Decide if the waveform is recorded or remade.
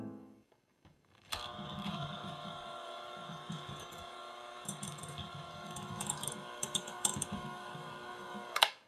remade